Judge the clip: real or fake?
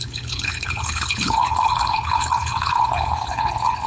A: fake